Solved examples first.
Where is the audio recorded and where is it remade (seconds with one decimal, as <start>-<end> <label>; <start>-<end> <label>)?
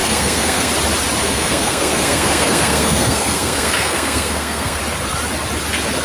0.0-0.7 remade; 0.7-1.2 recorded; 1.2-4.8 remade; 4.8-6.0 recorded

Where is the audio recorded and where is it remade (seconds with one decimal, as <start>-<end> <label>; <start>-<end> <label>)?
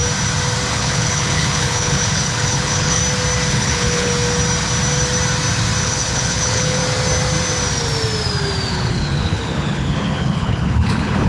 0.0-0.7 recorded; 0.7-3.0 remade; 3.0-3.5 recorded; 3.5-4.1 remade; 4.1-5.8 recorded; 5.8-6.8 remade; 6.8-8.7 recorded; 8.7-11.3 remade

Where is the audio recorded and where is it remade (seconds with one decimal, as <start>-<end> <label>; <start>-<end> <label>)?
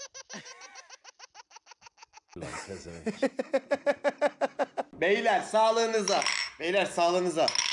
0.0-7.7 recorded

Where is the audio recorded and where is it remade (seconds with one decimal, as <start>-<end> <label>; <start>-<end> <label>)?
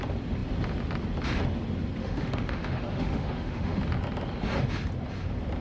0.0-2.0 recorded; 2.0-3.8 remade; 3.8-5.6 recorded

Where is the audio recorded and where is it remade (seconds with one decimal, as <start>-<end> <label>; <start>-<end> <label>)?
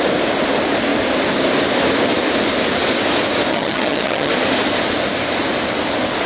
0.0-3.5 recorded; 3.5-4.3 remade; 4.3-6.3 recorded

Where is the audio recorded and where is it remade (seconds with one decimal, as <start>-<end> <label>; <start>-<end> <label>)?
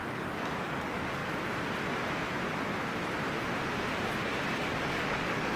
0.0-1.2 remade; 1.2-4.6 recorded; 4.6-5.6 remade